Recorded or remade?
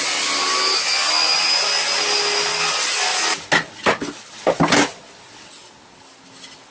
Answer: recorded